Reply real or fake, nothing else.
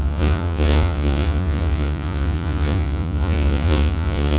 fake